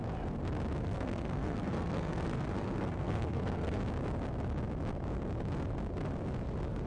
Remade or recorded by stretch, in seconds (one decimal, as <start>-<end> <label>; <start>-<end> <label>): 0.0-0.8 recorded; 0.8-3.8 remade; 3.8-6.9 recorded